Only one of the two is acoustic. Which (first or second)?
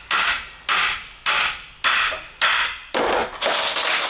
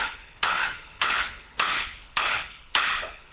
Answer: first